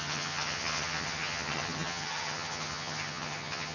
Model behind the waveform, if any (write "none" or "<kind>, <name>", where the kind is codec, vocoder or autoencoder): vocoder, HiFi-GAN